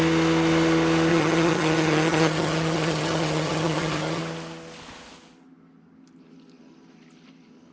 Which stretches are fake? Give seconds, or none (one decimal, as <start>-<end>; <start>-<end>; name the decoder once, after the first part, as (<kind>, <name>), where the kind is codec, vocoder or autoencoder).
1.1-4.2 (vocoder, HiFi-GAN)